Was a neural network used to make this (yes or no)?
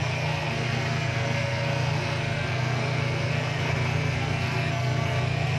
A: yes